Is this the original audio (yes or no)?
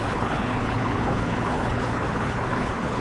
no